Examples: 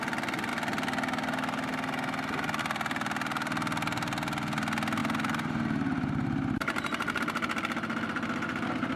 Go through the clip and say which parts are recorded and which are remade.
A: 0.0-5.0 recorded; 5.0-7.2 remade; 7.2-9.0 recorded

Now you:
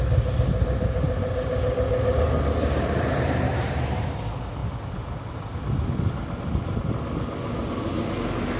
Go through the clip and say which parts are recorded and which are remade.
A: 0.0-2.6 recorded; 2.6-4.0 remade; 4.0-8.6 recorded

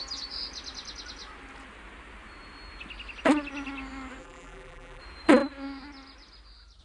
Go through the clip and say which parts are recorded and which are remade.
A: 0.0-4.2 recorded; 4.2-5.0 remade; 5.0-6.8 recorded

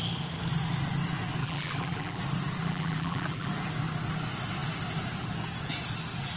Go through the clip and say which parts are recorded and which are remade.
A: 0.0-1.4 recorded; 1.4-2.2 remade; 2.2-2.6 recorded; 2.6-3.5 remade; 3.5-6.4 recorded

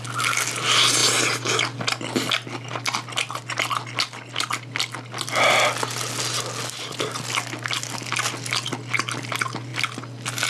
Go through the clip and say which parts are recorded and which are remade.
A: 0.0-10.5 recorded

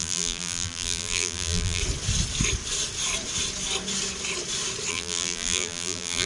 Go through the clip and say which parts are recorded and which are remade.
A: 0.0-1.8 remade; 1.8-4.9 recorded; 4.9-6.3 remade